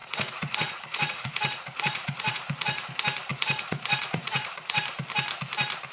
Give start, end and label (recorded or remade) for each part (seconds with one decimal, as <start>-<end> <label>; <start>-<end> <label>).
0.0-2.9 remade; 2.9-3.3 recorded; 3.3-4.8 remade; 4.8-5.9 recorded